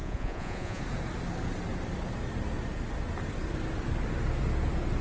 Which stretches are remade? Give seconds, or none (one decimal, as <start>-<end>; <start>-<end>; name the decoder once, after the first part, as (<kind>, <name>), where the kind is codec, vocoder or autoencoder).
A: 0.0-0.8 (vocoder, Vocos)